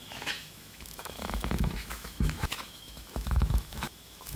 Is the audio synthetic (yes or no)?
yes